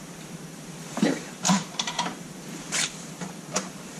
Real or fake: fake